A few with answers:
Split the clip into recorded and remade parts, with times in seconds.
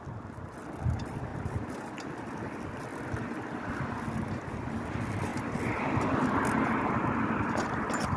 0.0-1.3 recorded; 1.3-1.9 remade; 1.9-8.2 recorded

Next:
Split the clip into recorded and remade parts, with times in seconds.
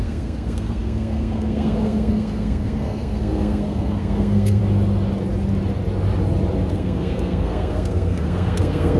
0.0-4.6 remade; 4.6-6.7 recorded; 6.7-9.0 remade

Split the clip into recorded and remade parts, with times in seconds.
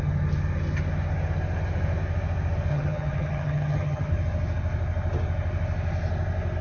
0.0-2.7 recorded; 2.7-4.1 remade; 4.1-6.6 recorded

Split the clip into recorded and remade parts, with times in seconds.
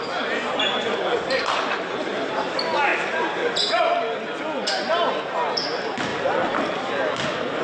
0.0-7.6 recorded